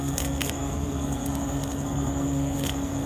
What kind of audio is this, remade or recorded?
remade